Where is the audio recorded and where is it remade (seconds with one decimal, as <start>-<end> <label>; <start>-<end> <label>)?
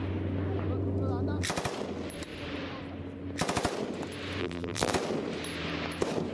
0.0-4.4 recorded; 4.4-4.9 remade; 4.9-6.3 recorded